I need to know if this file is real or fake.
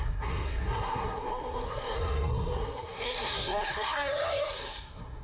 fake